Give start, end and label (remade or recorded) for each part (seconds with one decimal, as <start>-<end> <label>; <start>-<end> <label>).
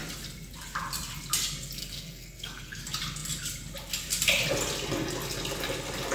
0.0-1.8 recorded; 1.8-2.8 remade; 2.8-6.1 recorded